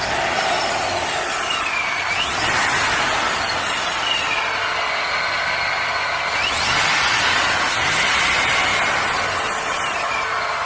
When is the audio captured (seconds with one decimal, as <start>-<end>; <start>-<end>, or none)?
0.0-10.7